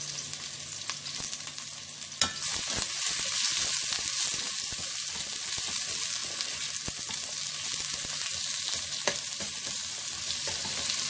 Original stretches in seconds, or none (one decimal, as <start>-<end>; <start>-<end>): 0.0-11.1

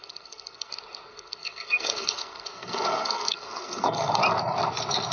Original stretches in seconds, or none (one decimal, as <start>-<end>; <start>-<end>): 0.7-1.1; 4.2-5.1

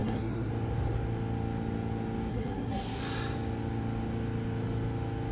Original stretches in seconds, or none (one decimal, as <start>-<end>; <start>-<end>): 0.5-2.3; 3.0-5.3

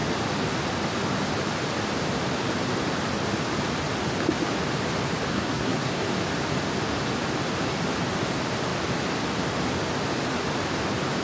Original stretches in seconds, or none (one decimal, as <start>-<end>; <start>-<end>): 0.0-5.3; 6.1-11.2

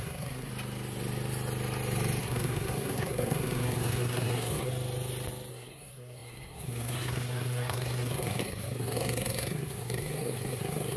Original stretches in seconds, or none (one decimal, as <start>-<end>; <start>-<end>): 0.5-2.2; 4.7-5.5

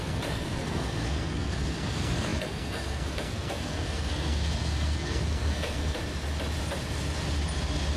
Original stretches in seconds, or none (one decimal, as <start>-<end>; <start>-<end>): 6.0-8.0

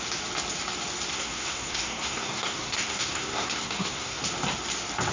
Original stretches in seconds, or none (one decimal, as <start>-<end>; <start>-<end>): 0.0-1.1; 4.2-5.1

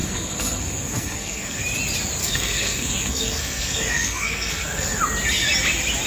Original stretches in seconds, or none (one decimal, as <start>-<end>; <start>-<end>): 1.6-2.2; 5.0-6.1